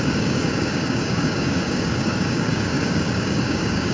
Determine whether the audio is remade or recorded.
remade